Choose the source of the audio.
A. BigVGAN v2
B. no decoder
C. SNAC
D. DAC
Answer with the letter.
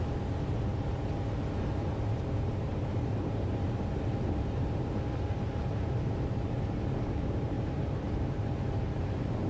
A